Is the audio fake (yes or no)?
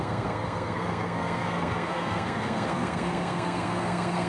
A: yes